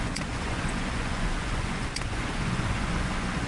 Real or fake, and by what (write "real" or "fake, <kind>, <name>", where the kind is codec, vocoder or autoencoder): fake, vocoder, Vocos